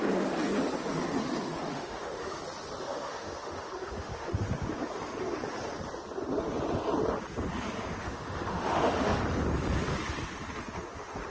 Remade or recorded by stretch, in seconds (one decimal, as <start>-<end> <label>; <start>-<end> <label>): 0.0-1.7 recorded; 1.7-2.4 remade; 2.4-2.8 recorded; 2.8-4.3 remade; 4.3-8.0 recorded; 8.0-9.2 remade; 9.2-11.3 recorded

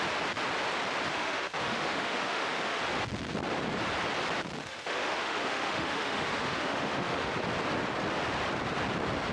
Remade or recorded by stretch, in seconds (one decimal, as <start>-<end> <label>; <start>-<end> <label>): 0.0-1.1 recorded; 1.1-2.8 remade; 2.8-4.6 recorded; 4.6-7.3 remade; 7.3-9.3 recorded

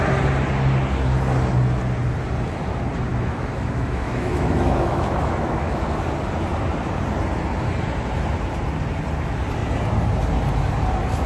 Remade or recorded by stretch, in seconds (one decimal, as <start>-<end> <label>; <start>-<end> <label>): 0.0-3.1 recorded; 3.1-5.7 remade; 5.7-11.3 recorded

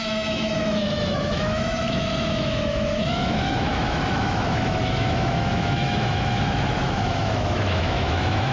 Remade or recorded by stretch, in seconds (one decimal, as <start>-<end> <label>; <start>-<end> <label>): 0.0-8.5 remade

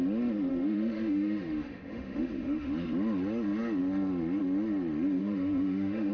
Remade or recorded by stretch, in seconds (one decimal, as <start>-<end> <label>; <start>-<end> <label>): 0.0-0.5 recorded; 0.5-2.7 remade; 2.7-5.2 recorded; 5.2-6.1 remade

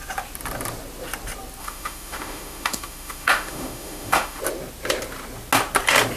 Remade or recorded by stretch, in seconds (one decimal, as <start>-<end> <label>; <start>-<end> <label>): 0.0-1.6 recorded; 1.6-4.4 remade; 4.4-6.2 recorded